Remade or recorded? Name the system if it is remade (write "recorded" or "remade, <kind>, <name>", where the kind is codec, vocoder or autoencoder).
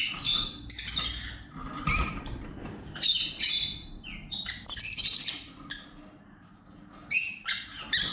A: recorded